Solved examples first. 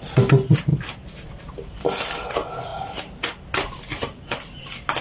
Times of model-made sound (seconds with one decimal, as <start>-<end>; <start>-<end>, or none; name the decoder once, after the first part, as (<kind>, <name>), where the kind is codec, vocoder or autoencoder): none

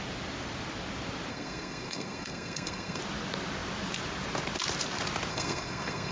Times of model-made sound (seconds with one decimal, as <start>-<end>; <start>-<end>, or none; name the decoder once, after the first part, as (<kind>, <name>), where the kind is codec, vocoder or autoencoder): 1.3-3.0 (codec, SNAC); 5.3-6.1

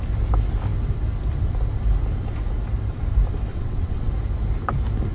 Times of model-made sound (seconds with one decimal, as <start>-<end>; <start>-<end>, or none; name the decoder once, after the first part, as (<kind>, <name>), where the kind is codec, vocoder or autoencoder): 3.5-4.1 (vocoder, WaveNeXt)

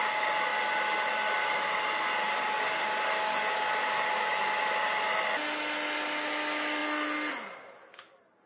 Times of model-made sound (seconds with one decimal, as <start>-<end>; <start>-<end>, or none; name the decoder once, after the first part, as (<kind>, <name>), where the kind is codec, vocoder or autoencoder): none

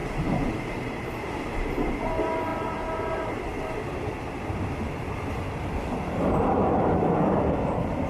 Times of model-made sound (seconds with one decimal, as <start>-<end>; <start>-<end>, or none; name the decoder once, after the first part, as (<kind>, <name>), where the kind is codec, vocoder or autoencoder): 0.0-2.1 (vocoder, BigVGAN v2); 2.5-4.7

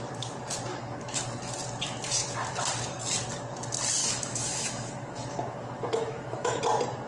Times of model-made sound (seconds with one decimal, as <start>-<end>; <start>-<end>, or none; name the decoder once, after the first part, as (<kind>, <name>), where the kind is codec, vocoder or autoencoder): 0.7-1.2 (autoencoder, DAC-VAE); 4.0-6.6